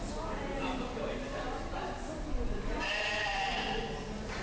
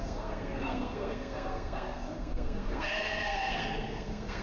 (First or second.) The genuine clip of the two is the first